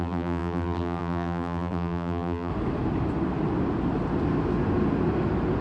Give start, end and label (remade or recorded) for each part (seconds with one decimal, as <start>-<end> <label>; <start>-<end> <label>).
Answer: 0.0-2.5 remade; 2.5-5.6 recorded